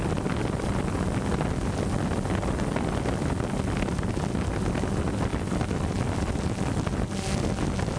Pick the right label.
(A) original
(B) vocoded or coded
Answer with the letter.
A